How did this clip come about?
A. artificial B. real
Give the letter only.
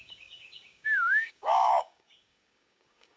A